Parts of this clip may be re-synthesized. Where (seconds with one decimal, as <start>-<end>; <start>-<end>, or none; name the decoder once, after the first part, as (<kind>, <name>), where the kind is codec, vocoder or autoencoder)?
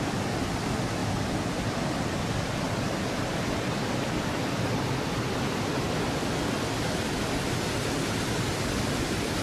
none